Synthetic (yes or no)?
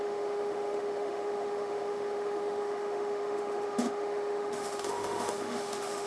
yes